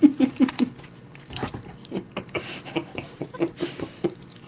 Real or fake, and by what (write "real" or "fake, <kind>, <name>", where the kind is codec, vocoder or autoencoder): fake, vocoder, BigVGAN v2